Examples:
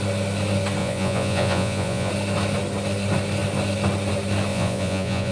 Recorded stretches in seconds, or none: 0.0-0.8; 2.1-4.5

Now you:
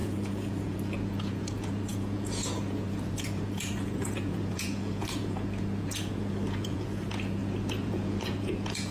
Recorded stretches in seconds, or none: none

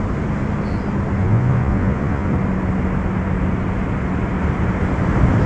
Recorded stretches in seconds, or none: 0.0-1.2; 2.3-5.5

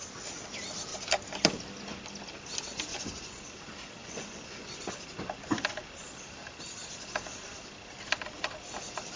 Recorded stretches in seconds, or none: 0.0-2.9; 3.4-4.0; 4.9-9.2